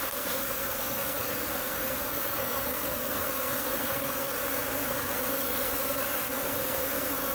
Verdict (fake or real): fake